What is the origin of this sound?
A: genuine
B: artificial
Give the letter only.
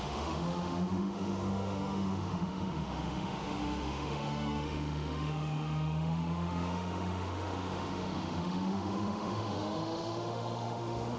B